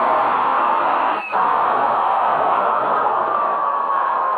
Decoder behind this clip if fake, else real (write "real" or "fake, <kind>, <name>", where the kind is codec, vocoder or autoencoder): fake, codec, SNAC